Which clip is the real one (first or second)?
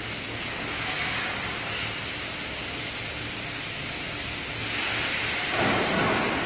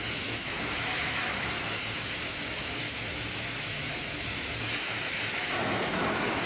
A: first